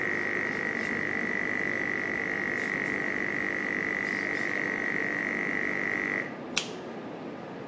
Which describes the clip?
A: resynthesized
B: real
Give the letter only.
B